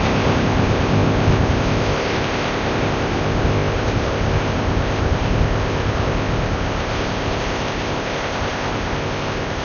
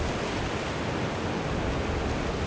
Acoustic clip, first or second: second